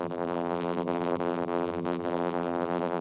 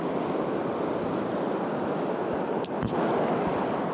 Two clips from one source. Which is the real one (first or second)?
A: second